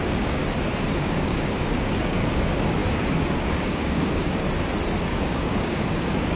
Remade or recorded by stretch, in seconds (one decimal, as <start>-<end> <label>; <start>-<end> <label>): 0.0-0.4 remade; 0.4-1.0 recorded; 1.0-4.4 remade; 4.4-5.0 recorded; 5.0-6.4 remade